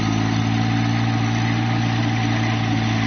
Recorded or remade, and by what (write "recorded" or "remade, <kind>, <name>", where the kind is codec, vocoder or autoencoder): recorded